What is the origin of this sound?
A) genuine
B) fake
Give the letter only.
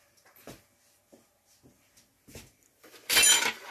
A